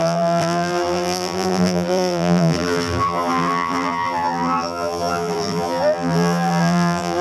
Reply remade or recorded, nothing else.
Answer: remade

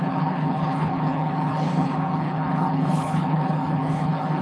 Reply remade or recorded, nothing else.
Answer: remade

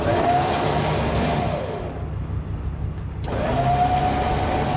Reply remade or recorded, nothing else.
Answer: recorded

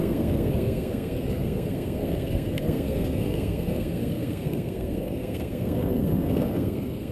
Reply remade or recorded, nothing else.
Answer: remade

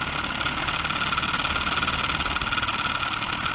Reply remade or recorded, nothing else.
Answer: recorded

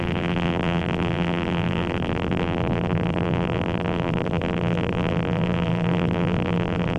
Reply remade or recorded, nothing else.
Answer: remade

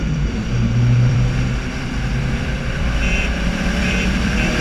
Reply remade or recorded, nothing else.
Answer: remade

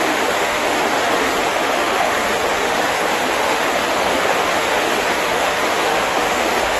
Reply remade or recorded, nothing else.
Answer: remade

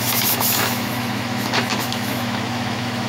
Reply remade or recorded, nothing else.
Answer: remade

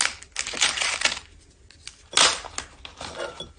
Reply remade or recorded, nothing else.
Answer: recorded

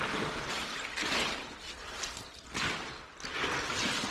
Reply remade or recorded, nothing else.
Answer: recorded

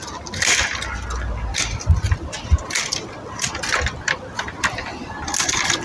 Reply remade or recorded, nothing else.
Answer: recorded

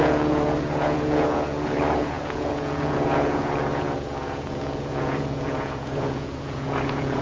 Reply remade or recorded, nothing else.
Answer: remade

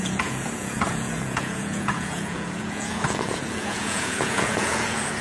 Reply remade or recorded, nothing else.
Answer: remade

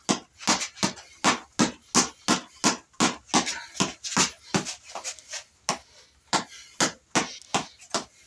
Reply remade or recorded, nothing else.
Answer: recorded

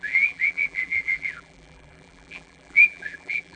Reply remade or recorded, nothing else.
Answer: remade